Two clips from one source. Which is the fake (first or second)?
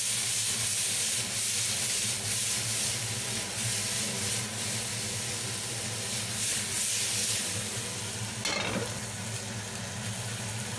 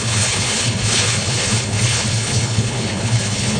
second